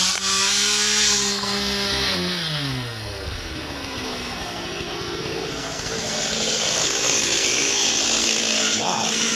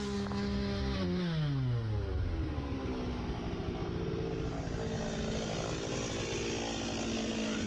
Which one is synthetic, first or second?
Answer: first